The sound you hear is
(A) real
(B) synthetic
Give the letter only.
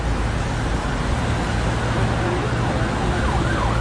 A